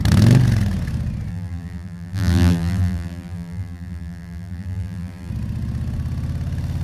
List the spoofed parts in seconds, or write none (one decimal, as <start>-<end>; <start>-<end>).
1.3-5.3

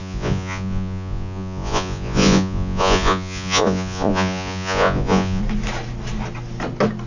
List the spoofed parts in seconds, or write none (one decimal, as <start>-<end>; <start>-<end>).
0.0-5.4

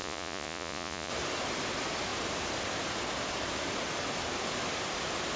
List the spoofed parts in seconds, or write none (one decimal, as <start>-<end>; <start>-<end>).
0.0-1.1

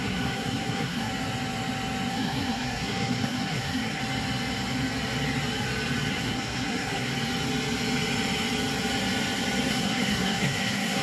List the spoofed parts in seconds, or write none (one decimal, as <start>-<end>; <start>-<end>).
0.0-1.1; 2.1-4.0; 6.1-7.1; 9.7-11.0

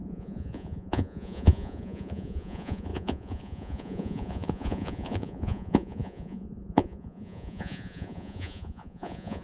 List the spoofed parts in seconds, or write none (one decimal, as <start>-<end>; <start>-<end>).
0.0-9.4